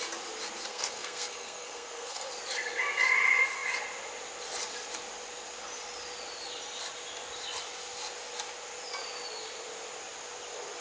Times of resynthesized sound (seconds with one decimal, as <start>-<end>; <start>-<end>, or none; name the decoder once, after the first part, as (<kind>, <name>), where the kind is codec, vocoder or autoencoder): 0.7-2.3 (codec, SNAC)